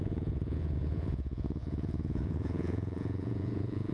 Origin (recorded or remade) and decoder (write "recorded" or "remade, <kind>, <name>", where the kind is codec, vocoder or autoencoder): remade, vocoder, Vocos